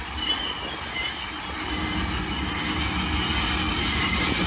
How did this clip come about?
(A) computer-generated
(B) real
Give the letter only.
B